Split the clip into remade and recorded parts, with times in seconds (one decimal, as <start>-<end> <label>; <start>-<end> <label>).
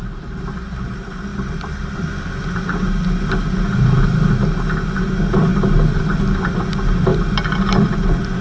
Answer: 0.0-8.4 recorded